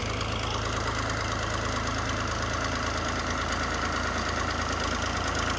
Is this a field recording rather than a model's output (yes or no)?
yes